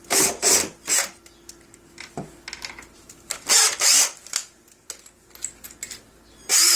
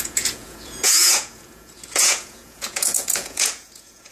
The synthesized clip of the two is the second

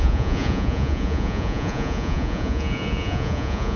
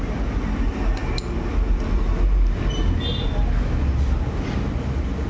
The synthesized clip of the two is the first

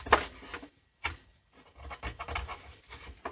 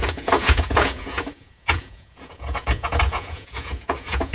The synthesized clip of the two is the second